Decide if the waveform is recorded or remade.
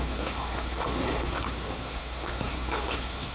remade